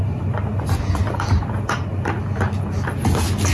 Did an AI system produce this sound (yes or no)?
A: no